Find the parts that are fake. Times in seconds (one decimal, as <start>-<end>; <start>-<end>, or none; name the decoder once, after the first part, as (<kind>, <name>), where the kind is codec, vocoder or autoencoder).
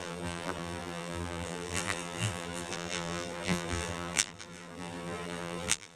0.0-6.0 (vocoder, BigVGAN v2)